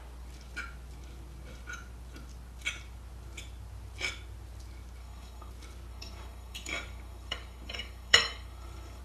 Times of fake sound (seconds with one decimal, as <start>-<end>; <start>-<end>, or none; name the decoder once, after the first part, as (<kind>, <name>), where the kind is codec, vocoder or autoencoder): 5.0-5.5 (codec, DAC); 5.9-9.0